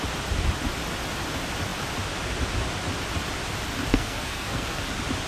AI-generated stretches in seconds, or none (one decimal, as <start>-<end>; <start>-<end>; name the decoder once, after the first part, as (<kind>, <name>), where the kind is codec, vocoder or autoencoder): 3.9-4.8 (codec, SNAC)